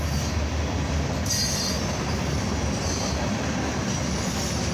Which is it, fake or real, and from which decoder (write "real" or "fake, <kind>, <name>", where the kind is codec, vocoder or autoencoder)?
real